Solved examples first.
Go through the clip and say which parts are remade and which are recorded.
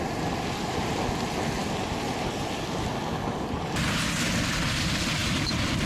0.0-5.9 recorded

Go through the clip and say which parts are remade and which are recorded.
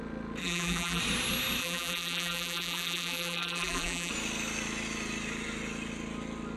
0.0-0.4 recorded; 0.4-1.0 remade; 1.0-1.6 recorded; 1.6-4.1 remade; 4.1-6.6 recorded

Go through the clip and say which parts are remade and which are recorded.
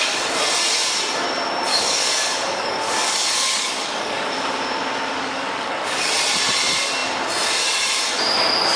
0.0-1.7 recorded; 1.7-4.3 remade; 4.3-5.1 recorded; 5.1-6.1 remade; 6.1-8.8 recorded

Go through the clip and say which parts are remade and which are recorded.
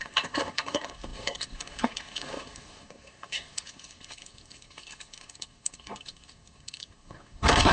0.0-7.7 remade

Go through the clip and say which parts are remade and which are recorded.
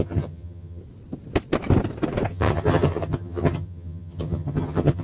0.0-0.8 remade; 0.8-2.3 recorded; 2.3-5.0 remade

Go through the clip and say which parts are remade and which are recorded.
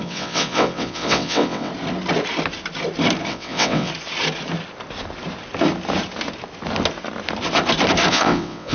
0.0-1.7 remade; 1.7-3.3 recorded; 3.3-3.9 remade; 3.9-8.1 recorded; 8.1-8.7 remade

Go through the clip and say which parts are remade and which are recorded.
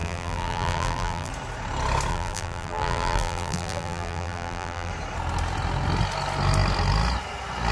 0.0-1.3 remade; 1.3-2.1 recorded; 2.1-4.9 remade; 4.9-7.7 recorded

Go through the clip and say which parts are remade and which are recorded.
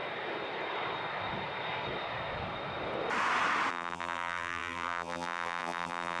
0.0-3.7 recorded; 3.7-6.2 remade